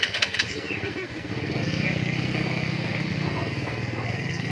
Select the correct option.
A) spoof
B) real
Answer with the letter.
A